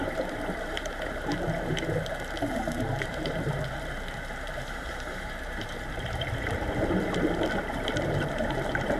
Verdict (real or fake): fake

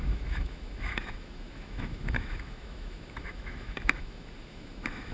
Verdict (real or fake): fake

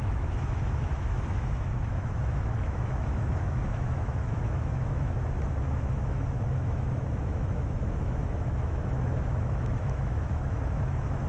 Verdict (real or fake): fake